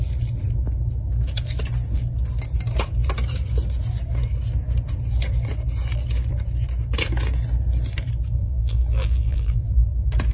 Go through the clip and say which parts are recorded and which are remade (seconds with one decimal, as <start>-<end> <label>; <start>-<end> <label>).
0.0-8.4 recorded; 8.4-9.9 remade; 9.9-10.3 recorded